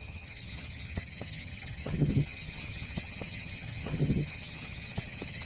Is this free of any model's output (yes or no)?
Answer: no